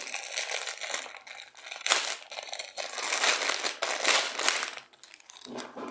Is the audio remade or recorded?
recorded